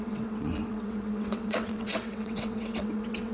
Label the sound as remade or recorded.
remade